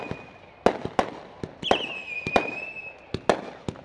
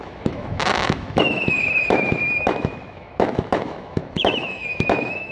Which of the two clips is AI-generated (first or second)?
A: second